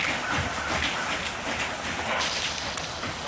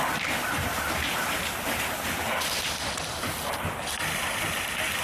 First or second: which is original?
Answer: first